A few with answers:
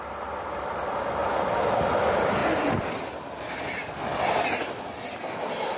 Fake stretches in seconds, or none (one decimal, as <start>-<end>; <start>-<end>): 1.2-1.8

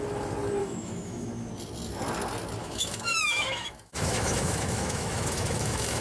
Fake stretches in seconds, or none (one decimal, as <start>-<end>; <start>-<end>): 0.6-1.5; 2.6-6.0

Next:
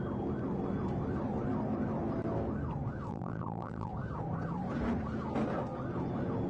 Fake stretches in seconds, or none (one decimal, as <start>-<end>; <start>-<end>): 3.1-3.9

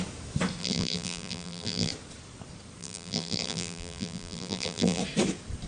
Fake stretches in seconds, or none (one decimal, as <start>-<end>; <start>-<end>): 0.6-1.9; 2.8-5.0